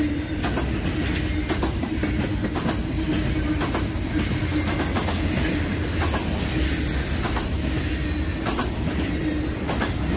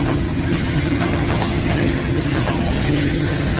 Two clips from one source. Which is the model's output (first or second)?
second